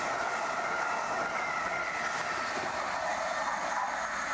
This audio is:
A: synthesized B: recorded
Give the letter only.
B